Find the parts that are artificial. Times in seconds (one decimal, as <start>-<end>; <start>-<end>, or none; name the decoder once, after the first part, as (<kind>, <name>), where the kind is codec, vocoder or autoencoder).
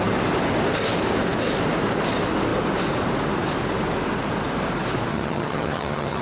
5.1-6.2 (vocoder, HiFi-GAN)